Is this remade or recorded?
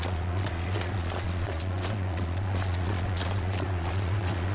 remade